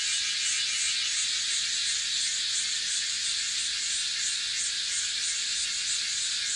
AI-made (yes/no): no